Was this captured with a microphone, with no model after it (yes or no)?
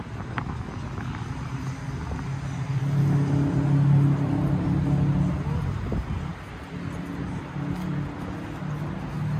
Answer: yes